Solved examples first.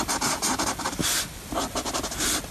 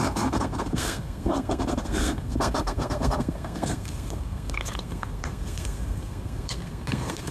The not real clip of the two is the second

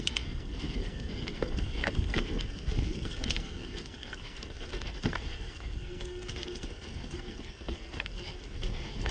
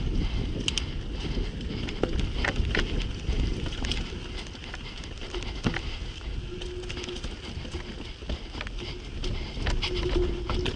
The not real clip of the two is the first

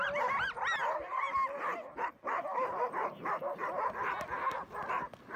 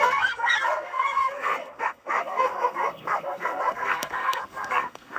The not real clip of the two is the second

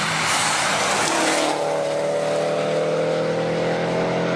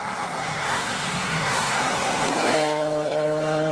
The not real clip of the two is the second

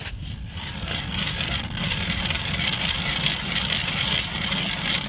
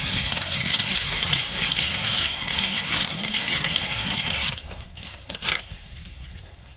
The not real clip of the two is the second